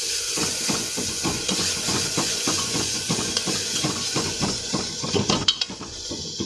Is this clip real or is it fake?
fake